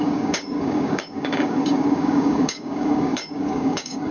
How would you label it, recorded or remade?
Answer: remade